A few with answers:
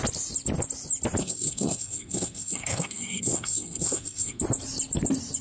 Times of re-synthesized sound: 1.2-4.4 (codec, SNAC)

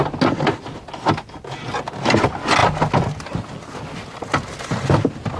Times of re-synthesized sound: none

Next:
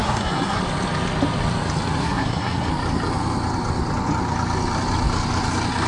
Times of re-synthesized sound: 0.0-0.6 (codec, SNAC); 2.0-2.7